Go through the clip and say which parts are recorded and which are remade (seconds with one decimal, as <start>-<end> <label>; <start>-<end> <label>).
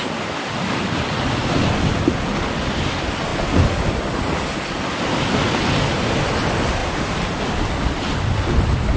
0.0-9.0 recorded